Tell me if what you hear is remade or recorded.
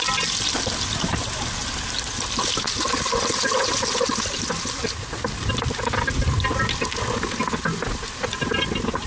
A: recorded